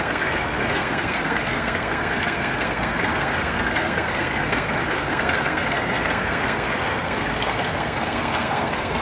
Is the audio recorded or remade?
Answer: remade